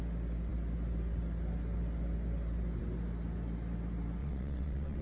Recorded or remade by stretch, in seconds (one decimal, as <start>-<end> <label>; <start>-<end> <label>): 0.0-4.2 recorded; 4.2-5.0 remade